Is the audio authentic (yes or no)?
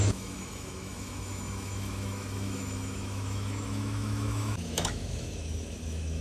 no